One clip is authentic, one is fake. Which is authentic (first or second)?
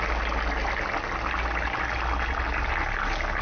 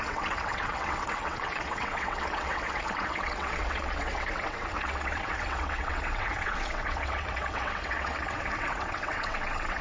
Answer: first